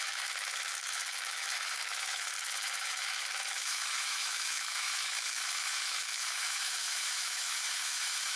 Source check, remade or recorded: remade